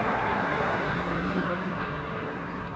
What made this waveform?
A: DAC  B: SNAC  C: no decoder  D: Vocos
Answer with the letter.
B